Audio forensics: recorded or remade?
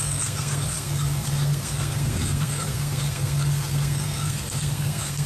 remade